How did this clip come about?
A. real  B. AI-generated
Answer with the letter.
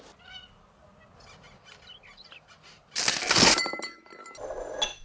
A